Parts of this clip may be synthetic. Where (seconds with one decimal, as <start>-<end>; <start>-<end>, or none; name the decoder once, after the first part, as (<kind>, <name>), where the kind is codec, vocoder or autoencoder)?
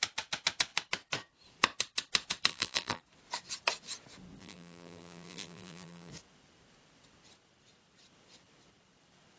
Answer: 2.5-3.0 (vocoder, BigVGAN v2); 4.4-6.1